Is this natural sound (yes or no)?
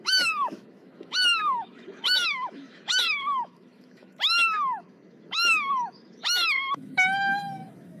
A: no